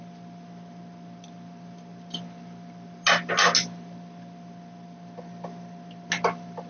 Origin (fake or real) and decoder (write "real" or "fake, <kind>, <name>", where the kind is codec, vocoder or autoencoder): real